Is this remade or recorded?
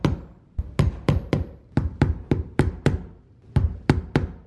recorded